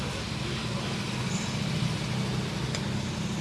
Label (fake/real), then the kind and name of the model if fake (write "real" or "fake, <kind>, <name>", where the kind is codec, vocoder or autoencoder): real